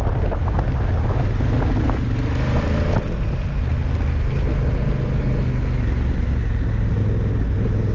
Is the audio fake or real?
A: real